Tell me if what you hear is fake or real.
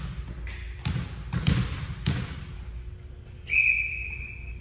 real